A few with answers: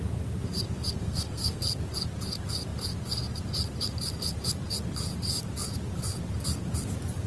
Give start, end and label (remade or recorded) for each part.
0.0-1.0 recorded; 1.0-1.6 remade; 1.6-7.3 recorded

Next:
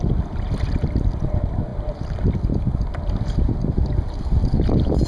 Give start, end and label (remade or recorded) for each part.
0.0-5.1 recorded

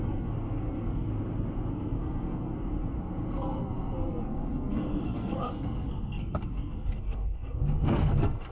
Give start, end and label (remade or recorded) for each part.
0.0-1.1 remade; 1.1-1.7 recorded; 1.7-8.5 remade